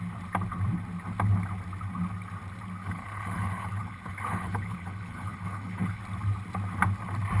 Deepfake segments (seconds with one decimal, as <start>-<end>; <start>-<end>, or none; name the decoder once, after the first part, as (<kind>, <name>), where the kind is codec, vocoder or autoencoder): 2.8-6.0 (codec, HILCodec)